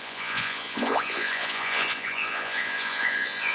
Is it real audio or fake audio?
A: fake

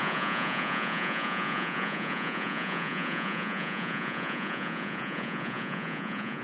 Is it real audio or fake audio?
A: fake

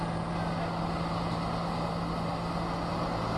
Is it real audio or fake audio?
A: real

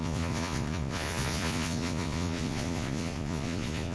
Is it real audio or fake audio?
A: fake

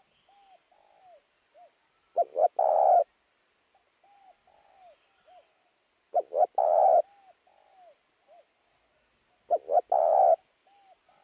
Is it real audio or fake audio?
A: real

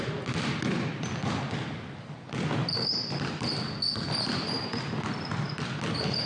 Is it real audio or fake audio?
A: real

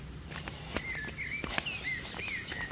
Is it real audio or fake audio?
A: real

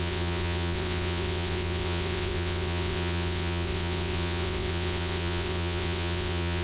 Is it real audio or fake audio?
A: fake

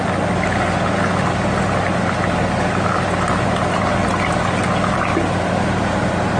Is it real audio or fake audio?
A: real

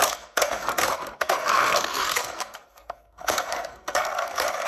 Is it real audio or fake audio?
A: fake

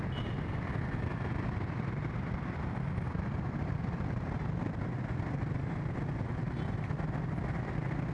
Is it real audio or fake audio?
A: fake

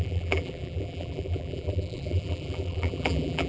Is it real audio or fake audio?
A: fake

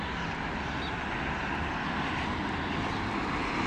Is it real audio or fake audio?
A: real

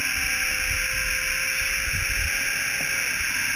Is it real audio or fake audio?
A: real